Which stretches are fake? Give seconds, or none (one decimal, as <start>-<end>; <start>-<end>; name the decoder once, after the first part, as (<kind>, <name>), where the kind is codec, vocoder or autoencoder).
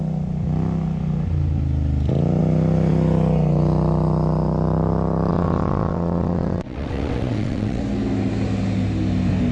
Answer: 5.3-7.8 (vocoder, WaveNeXt)